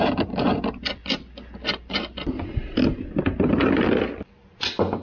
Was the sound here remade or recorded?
recorded